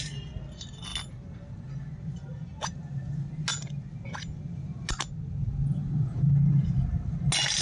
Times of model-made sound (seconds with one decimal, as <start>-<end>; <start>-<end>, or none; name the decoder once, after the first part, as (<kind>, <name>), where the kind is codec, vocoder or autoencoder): none